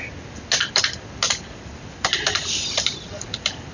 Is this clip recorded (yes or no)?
yes